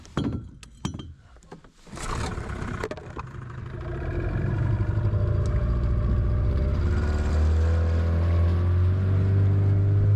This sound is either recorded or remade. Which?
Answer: recorded